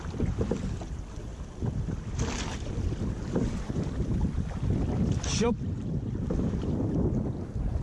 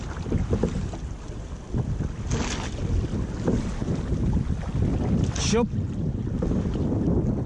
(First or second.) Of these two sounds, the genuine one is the second